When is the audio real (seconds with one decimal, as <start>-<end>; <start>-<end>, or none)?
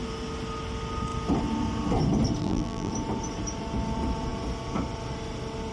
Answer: 0.0-2.4; 2.9-5.7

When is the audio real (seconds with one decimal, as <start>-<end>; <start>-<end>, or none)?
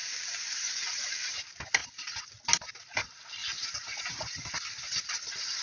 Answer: 1.4-3.4; 4.6-5.6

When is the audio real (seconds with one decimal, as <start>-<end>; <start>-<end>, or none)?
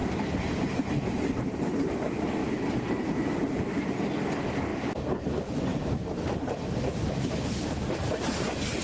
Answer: 1.7-2.4; 3.8-5.7